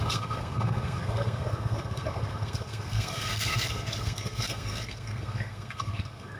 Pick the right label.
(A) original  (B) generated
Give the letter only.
B